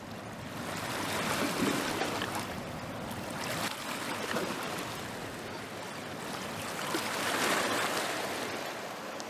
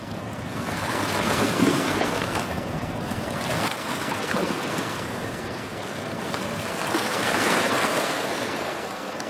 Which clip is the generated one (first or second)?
second